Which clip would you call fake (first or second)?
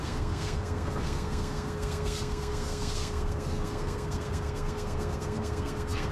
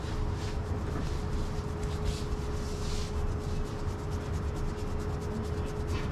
first